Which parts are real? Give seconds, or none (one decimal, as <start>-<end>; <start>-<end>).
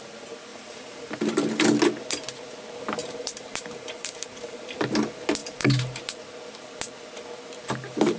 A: 0.0-0.5; 1.1-3.0; 4.6-5.4; 6.0-8.2